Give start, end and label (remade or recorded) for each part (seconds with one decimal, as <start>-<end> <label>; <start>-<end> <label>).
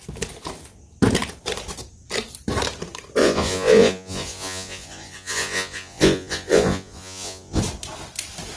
0.0-3.2 recorded; 3.2-7.6 remade; 7.6-8.6 recorded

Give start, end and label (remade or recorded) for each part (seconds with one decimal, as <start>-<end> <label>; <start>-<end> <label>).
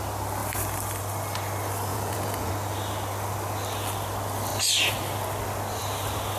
0.0-1.9 recorded; 1.9-2.5 remade; 2.5-6.4 recorded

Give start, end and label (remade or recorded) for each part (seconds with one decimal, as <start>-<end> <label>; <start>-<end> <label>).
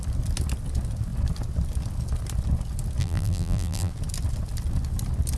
0.0-3.0 recorded; 3.0-3.9 remade; 3.9-5.4 recorded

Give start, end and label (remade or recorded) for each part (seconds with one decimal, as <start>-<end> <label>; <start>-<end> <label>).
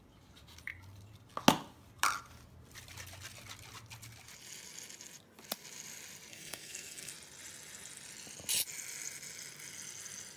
0.0-6.3 recorded; 6.3-7.1 remade; 7.1-10.4 recorded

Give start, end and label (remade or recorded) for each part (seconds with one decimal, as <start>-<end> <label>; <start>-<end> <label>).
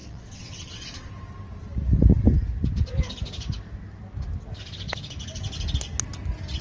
0.0-1.1 remade; 1.1-6.6 recorded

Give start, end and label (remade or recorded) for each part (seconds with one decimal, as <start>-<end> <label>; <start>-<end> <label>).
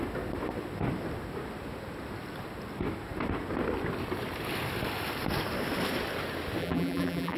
0.0-6.6 recorded; 6.6-7.4 remade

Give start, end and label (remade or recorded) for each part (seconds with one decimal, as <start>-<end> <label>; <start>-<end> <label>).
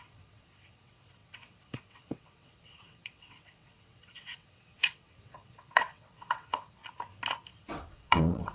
0.0-6.8 remade; 6.8-7.5 recorded; 7.5-8.5 remade